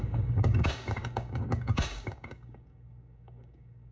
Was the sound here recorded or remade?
remade